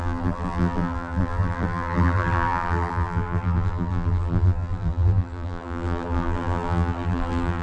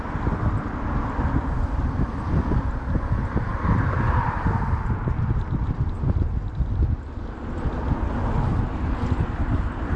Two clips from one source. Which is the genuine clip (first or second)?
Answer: second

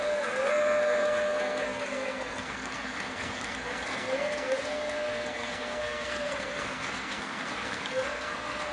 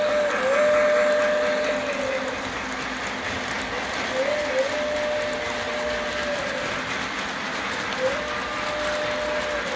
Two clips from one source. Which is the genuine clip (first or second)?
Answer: second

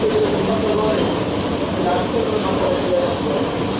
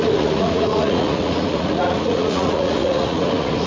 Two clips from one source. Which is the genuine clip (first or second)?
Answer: first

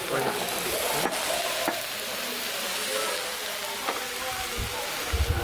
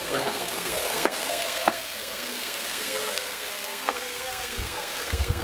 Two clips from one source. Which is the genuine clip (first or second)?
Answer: first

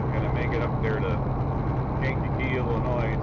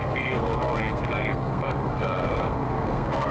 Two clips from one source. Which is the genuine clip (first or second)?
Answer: first